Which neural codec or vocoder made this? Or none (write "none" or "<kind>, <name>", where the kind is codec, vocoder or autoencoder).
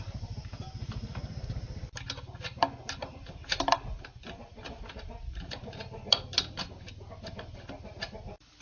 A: none